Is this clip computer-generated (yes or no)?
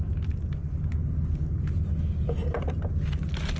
no